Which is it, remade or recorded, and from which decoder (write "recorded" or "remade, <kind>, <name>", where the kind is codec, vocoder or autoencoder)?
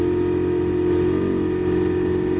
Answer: recorded